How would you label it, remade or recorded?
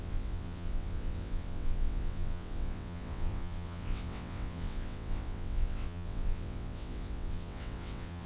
remade